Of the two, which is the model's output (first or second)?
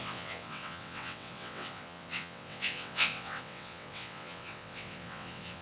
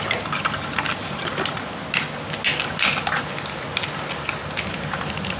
first